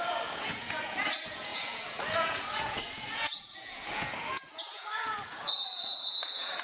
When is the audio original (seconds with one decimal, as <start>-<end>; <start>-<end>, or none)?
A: none